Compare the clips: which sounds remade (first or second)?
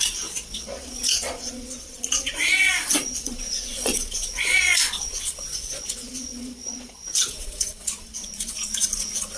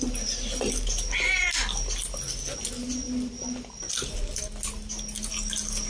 first